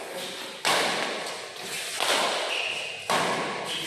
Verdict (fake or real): real